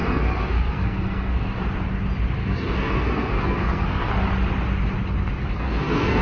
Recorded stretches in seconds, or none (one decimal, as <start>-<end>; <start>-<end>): 1.6-2.4; 4.1-5.4

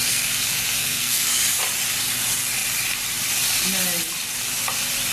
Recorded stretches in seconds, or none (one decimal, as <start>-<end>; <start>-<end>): 1.6-5.1

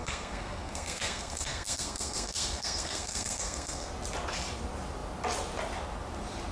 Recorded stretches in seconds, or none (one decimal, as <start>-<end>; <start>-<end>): 3.9-6.5

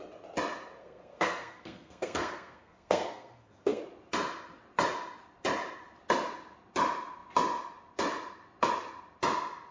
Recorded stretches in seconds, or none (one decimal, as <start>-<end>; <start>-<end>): 0.0-0.8; 3.8-9.7

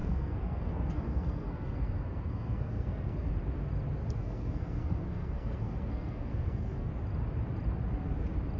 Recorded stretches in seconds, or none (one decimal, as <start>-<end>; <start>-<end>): 3.3-4.2; 6.9-8.6

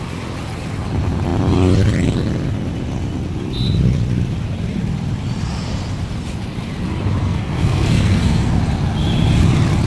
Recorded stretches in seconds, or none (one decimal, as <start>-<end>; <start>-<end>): 0.0-7.2; 8.6-9.9